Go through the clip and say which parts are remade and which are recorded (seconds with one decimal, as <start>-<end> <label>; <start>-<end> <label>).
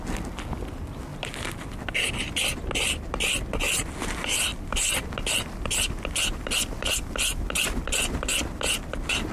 0.0-9.3 recorded